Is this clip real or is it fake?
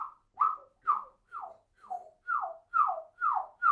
real